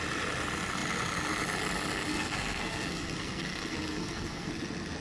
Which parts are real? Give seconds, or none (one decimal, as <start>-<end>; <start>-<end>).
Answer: 0.0-2.1; 4.5-5.0